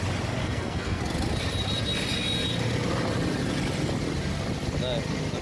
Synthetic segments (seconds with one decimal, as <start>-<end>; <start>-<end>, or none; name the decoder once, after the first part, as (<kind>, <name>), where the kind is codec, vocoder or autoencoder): 0.4-1.0 (codec, SNAC)